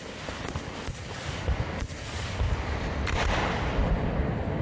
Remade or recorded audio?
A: recorded